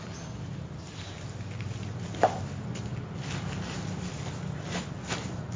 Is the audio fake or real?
real